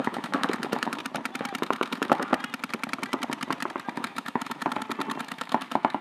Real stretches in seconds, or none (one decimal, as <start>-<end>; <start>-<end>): 1.0-1.6; 2.3-3.9; 4.6-5.2